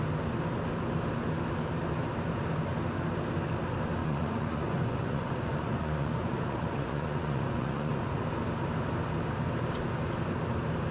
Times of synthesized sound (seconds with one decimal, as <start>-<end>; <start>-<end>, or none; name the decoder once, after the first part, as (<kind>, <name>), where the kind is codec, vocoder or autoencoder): 4.0-8.2 (vocoder, Vocos)